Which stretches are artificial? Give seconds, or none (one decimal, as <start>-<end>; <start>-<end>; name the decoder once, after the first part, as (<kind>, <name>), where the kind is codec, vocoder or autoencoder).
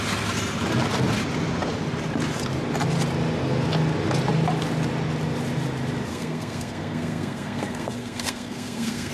6.1-9.1 (codec, SNAC)